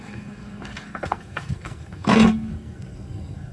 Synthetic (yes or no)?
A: yes